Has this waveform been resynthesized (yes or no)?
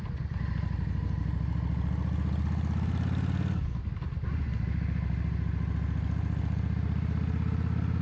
no